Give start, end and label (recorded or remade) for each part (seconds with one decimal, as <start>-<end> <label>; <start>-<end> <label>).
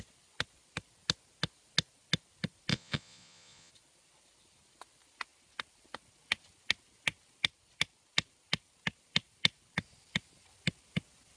0.0-2.7 recorded; 2.7-3.7 remade; 3.7-11.4 recorded